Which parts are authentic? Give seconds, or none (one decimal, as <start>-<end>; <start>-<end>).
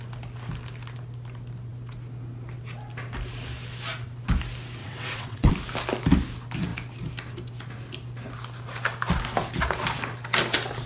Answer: 0.0-4.8; 5.5-10.9